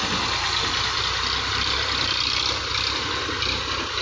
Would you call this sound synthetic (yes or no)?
no